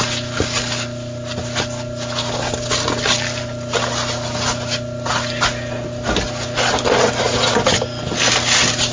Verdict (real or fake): real